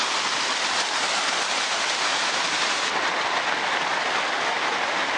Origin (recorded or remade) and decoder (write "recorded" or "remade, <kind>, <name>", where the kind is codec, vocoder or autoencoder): recorded